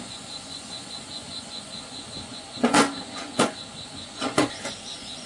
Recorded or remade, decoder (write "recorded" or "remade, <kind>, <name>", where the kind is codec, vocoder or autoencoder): remade, vocoder, Vocos